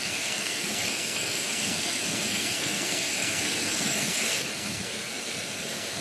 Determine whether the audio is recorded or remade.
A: remade